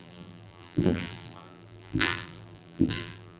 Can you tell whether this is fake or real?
fake